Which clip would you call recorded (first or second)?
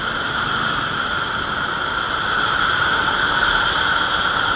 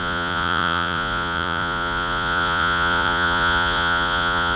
first